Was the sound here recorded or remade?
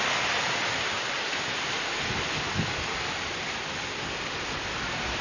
recorded